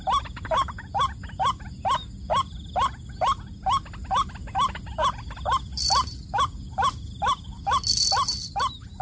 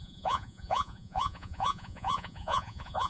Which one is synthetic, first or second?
second